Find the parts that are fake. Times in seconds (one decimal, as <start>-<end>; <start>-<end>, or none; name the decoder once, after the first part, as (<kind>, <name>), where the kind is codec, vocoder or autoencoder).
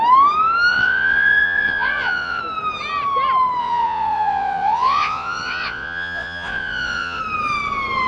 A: 0.7-2.4 (vocoder, Vocos); 3.6-7.2